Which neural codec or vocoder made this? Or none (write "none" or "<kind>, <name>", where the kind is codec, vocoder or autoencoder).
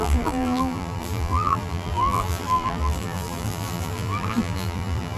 vocoder, BigVGAN v2